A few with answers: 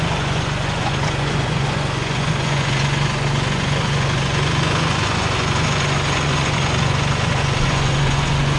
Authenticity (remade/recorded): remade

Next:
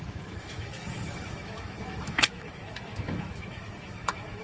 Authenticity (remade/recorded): remade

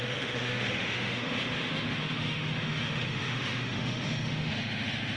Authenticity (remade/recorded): remade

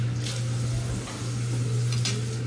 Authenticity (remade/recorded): recorded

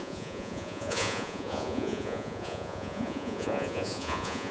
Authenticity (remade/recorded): remade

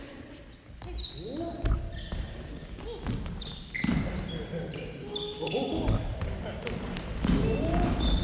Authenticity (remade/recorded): recorded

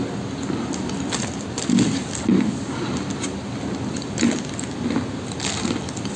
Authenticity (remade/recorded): recorded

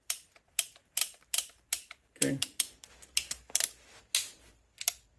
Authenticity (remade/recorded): remade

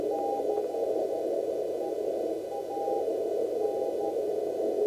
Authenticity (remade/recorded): recorded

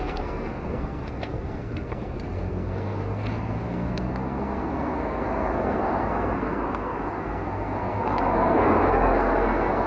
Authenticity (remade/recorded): remade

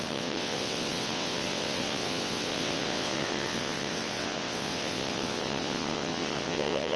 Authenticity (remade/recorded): remade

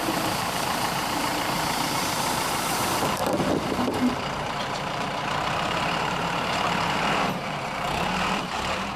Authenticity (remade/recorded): remade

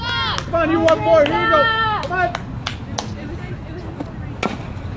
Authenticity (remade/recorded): recorded